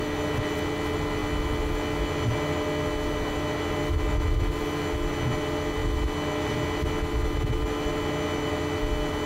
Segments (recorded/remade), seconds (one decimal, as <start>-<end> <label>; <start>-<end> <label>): 0.0-9.3 recorded